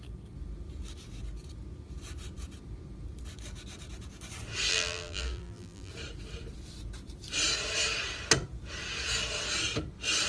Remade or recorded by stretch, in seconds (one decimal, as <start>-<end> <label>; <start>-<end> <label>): 0.0-4.7 recorded; 4.7-5.9 remade; 5.9-10.3 recorded